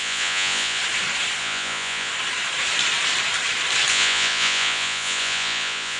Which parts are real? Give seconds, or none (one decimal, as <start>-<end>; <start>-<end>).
0.8-1.4; 2.1-3.9